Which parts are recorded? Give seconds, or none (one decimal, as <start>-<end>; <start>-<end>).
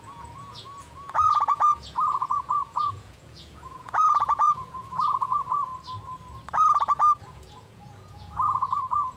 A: 5.7-7.2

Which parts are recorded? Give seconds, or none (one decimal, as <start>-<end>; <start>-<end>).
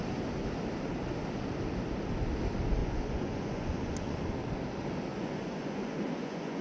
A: 0.0-2.8; 4.2-5.1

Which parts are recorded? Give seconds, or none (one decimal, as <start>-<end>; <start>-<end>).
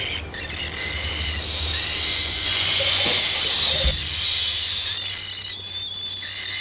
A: 0.0-2.1; 3.2-6.6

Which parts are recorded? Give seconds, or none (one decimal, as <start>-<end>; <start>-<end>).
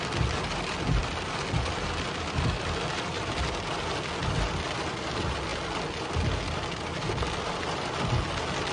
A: 0.0-8.7